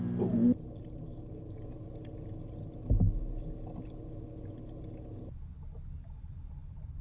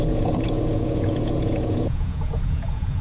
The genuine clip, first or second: first